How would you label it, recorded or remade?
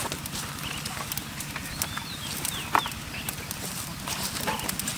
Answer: recorded